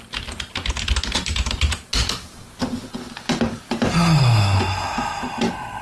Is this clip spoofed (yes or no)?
no